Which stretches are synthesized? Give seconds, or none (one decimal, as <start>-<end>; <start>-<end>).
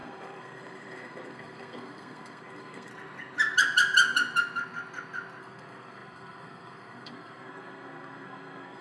0.0-2.9; 5.4-8.8